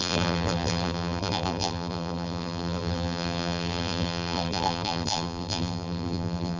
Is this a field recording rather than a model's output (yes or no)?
no